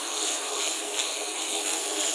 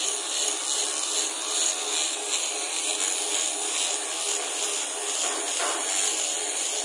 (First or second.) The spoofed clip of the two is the first